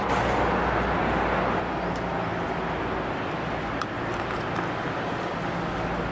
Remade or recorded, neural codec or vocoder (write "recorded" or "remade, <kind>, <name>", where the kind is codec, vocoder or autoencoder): recorded